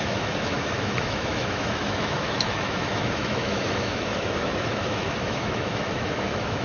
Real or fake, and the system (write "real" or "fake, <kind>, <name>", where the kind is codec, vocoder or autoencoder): fake, autoencoder, DAC-VAE